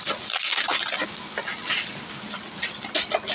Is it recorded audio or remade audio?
recorded